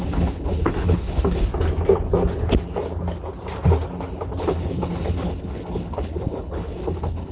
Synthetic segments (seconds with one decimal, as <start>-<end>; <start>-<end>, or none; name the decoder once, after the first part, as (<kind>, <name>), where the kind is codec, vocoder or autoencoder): 0.0-1.5 (codec, HILCodec); 4.4-7.3